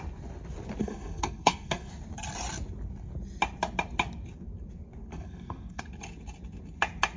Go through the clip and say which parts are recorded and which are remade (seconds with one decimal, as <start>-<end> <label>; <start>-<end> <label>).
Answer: 0.0-0.8 recorded; 0.8-1.9 remade; 1.9-5.1 recorded; 5.1-5.8 remade; 5.8-7.2 recorded